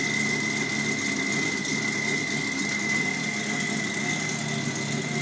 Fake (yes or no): no